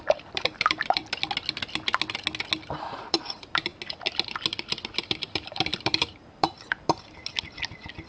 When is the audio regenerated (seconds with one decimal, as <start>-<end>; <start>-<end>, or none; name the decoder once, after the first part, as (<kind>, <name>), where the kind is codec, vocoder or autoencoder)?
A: 0.0-1.0 (vocoder, BigVGAN v2); 2.8-3.7; 5.2-7.2